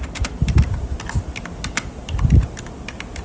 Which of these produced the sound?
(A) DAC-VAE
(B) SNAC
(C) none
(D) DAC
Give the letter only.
C